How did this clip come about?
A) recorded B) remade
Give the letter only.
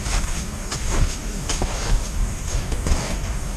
B